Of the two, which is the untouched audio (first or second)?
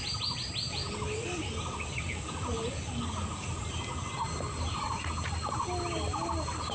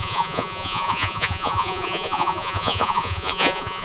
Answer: first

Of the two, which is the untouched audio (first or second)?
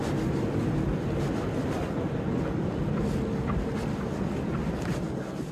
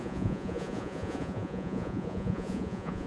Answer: first